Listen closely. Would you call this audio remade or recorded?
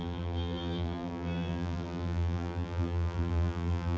remade